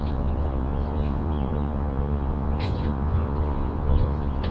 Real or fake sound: fake